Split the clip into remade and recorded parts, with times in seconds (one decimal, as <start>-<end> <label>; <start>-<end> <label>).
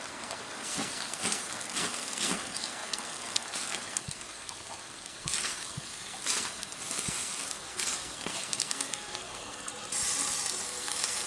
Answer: 0.0-9.7 remade; 9.7-10.6 recorded; 10.6-11.3 remade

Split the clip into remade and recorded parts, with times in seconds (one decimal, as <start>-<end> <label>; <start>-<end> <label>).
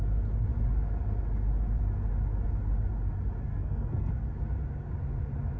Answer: 0.0-3.5 recorded; 3.5-4.1 remade; 4.1-5.6 recorded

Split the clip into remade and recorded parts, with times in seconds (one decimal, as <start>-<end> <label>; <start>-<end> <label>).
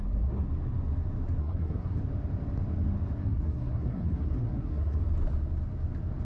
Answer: 0.0-1.4 recorded; 1.4-2.0 remade; 2.0-3.2 recorded; 3.2-5.0 remade; 5.0-6.2 recorded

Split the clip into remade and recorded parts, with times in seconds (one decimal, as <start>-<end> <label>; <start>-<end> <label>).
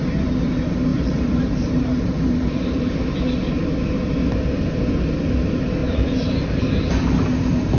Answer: 0.0-0.9 recorded; 0.9-2.9 remade; 2.9-5.8 recorded; 5.8-6.7 remade; 6.7-7.8 recorded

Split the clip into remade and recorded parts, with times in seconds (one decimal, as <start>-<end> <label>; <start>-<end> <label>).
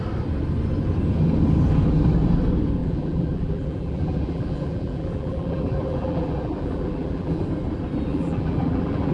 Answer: 0.0-2.8 recorded; 2.8-7.4 remade; 7.4-8.1 recorded; 8.1-9.1 remade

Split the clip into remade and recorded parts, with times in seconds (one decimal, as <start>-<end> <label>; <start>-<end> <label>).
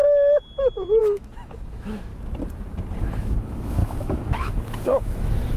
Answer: 0.0-1.0 recorded; 1.0-2.1 remade; 2.1-3.0 recorded; 3.0-5.6 remade